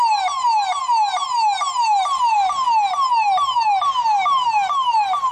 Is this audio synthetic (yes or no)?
no